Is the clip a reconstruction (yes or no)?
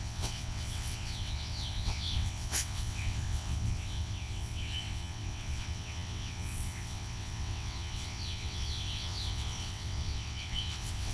yes